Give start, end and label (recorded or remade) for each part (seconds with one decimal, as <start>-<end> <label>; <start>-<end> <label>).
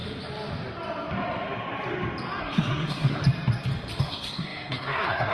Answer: 0.0-2.4 recorded; 2.4-3.2 remade; 3.2-4.0 recorded; 4.0-5.3 remade